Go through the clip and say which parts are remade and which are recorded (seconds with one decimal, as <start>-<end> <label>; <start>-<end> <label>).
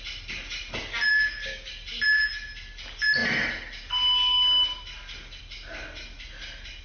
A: 0.0-1.1 recorded; 1.1-1.7 remade; 1.7-6.8 recorded